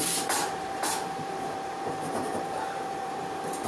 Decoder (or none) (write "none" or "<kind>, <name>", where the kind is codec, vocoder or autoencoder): vocoder, BigVGAN v2